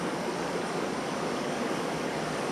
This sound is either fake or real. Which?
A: fake